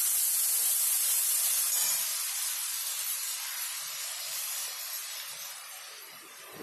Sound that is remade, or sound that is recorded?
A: remade